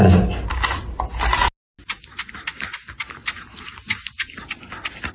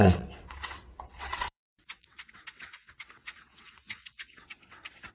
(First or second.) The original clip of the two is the first